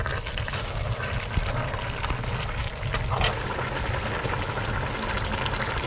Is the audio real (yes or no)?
yes